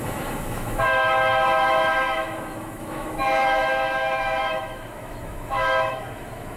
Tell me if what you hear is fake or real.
fake